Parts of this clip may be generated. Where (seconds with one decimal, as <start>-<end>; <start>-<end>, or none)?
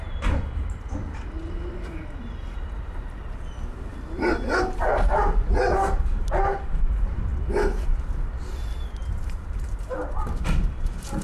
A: 9.0-10.2